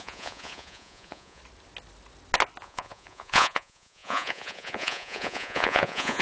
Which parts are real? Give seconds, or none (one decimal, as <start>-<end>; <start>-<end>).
1.4-2.6